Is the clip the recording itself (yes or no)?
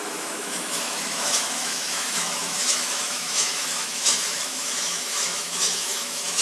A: no